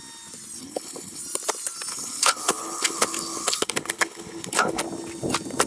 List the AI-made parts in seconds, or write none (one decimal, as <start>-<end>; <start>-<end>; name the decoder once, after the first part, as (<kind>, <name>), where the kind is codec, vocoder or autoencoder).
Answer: 0.6-1.2 (codec, HILCodec); 1.9-4.8